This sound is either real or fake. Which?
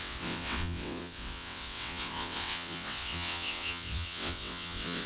fake